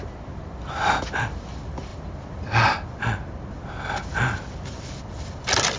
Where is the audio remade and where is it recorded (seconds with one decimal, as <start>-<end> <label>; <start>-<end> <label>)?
0.0-5.8 recorded